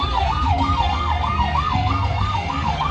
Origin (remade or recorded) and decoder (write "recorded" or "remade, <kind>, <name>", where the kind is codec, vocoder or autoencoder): remade, codec, SNAC